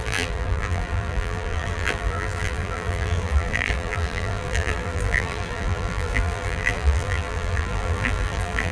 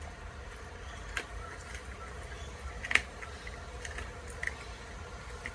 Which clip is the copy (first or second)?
first